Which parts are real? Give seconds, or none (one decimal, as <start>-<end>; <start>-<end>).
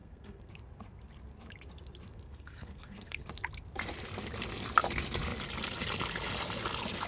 0.5-2.1; 3.2-7.1